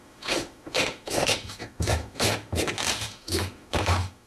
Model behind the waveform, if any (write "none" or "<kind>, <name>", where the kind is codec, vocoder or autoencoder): autoencoder, DAC-VAE